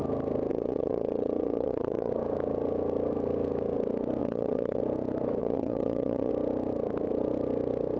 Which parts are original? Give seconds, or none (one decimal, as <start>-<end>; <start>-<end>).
0.0-0.5; 2.1-4.2; 4.8-5.4; 6.3-8.0